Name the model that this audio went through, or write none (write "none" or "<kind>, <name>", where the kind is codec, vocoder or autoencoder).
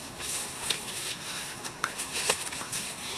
codec, SNAC